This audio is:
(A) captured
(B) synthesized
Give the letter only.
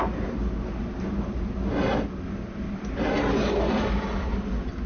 A